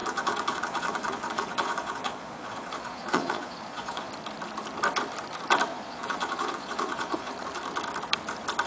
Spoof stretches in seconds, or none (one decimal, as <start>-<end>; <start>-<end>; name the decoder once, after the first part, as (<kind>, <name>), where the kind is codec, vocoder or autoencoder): 0.0-4.1 (vocoder, Vocos); 5.7-7.3

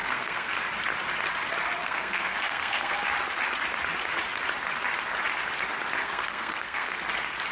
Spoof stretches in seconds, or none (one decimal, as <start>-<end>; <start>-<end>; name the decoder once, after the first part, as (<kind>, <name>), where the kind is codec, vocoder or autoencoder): 0.0-0.5 (codec, SNAC); 1.8-3.0; 6.0-6.9

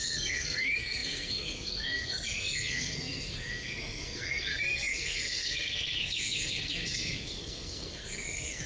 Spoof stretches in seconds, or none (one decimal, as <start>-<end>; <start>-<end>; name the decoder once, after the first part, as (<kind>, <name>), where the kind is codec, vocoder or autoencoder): 0.0-8.7 (codec, SNAC)

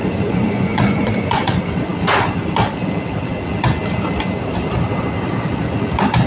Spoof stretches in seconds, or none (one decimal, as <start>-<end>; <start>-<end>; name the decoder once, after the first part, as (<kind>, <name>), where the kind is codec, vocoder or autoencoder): 0.0-1.5 (vocoder, Vocos)

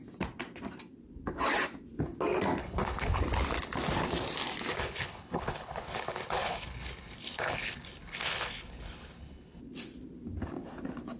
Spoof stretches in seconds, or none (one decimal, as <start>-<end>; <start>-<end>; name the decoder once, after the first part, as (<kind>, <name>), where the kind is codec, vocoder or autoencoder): 2.6-3.2 (codec, HILCodec); 4.7-9.6